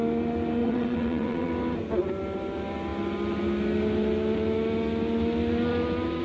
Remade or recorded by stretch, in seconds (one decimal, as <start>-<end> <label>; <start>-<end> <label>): 0.0-0.6 recorded; 0.6-1.5 remade; 1.5-6.2 recorded